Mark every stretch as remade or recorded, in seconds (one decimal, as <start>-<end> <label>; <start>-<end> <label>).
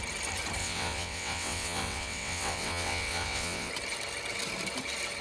0.0-0.6 recorded; 0.6-3.7 remade; 3.7-5.2 recorded